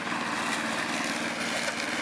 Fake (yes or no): no